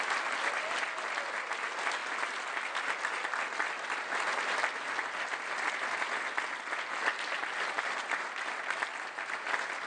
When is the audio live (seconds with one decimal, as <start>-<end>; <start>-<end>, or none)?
0.0-9.9